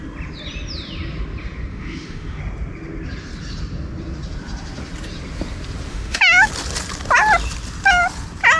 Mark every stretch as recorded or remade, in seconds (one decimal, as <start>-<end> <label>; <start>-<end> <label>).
0.0-1.7 recorded; 1.7-2.4 remade; 2.4-5.9 recorded; 5.9-6.5 remade; 6.5-8.6 recorded